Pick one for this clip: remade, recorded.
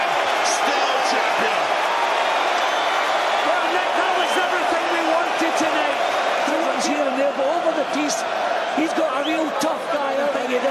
recorded